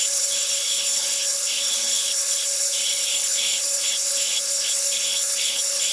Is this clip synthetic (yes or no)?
yes